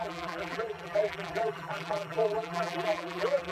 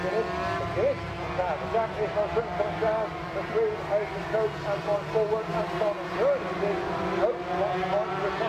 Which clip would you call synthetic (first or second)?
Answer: first